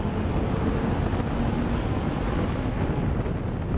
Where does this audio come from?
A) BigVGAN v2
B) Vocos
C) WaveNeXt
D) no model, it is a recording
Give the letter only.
D